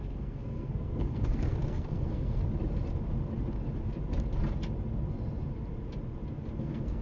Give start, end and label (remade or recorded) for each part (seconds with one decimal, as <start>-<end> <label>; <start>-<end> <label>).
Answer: 0.0-2.4 remade; 2.4-6.6 recorded; 6.6-7.0 remade